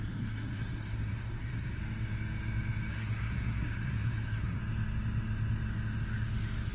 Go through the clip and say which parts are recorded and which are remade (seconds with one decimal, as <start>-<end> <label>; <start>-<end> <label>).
0.0-1.8 remade; 1.8-2.9 recorded; 2.9-4.6 remade; 4.6-6.7 recorded